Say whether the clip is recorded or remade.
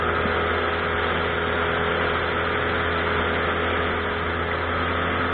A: recorded